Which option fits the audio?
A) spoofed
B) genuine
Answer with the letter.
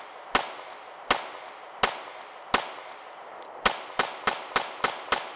B